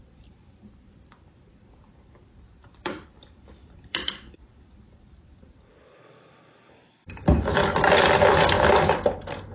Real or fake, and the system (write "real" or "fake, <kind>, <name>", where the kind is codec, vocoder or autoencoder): fake, vocoder, BigVGAN v2